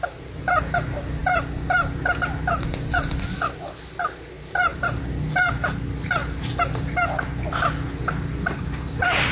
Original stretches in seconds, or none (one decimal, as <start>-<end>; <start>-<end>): 0.0-9.3